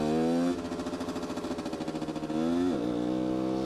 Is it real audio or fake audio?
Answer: real